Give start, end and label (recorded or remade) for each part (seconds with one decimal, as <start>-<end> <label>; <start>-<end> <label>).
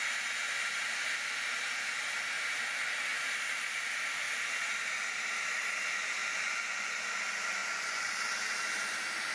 0.0-6.2 recorded; 6.2-7.0 remade; 7.0-7.6 recorded; 7.6-8.1 remade; 8.1-9.3 recorded